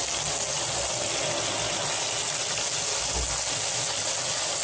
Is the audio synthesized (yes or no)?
no